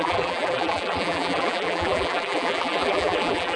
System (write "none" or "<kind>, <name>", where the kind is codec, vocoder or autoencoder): vocoder, BigVGAN v2